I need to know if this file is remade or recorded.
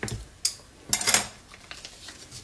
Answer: recorded